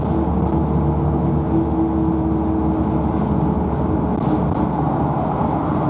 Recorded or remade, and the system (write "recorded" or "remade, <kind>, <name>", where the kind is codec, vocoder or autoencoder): recorded